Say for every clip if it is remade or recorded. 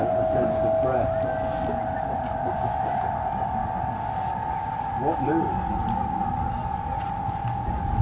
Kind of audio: recorded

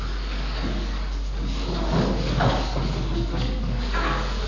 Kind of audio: remade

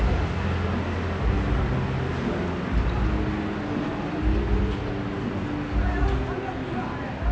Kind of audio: recorded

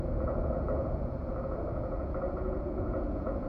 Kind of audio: remade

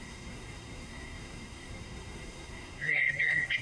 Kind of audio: remade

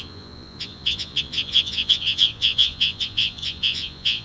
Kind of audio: remade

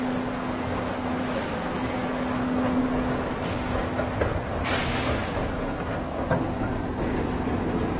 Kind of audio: recorded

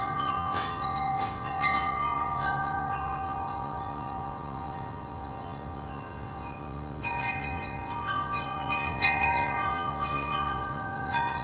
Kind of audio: remade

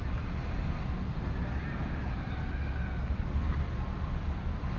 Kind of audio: recorded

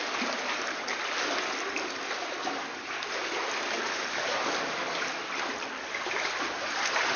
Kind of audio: recorded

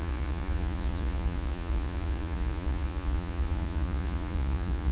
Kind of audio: remade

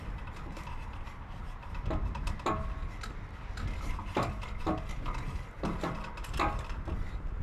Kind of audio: recorded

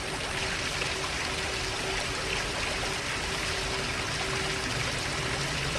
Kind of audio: recorded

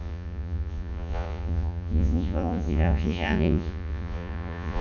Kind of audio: remade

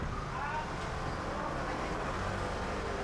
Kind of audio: recorded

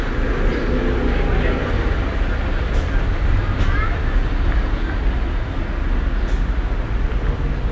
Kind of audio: recorded